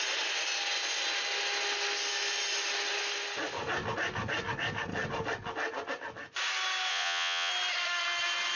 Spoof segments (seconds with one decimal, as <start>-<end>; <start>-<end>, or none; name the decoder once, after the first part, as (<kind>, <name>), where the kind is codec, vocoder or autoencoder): 6.9-7.5 (vocoder, Vocos)